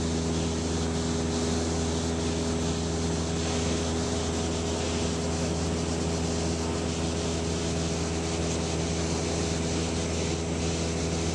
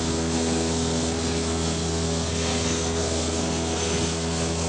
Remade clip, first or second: second